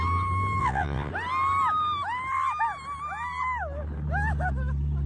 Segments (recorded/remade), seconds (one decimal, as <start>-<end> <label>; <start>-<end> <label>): 0.0-0.6 recorded; 0.6-1.1 remade; 1.1-5.1 recorded